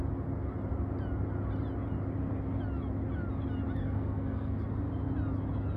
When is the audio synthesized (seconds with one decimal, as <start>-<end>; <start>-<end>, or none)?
3.8-4.6